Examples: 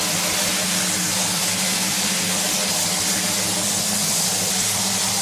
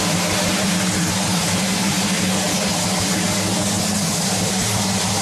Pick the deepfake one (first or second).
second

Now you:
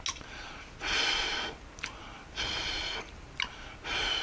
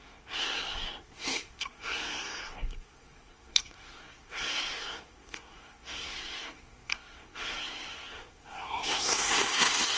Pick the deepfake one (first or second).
second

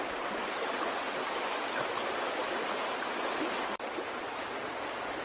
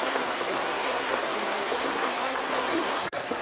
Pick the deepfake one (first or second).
second